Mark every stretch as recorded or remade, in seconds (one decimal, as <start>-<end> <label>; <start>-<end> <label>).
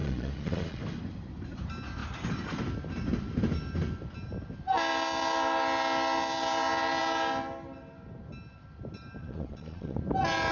0.0-0.8 remade; 0.8-9.2 recorded; 9.2-10.0 remade; 10.0-10.5 recorded